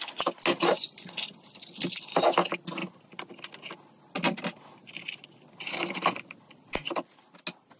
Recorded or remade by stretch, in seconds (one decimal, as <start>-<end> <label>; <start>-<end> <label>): 0.0-7.8 recorded